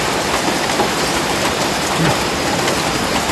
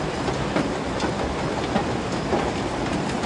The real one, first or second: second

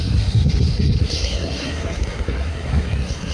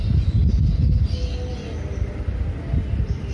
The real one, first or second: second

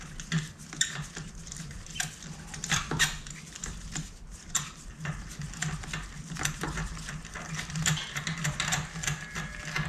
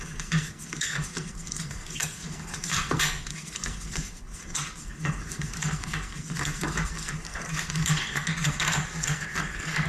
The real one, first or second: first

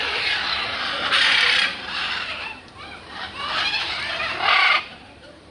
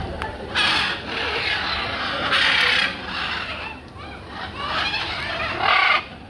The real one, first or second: second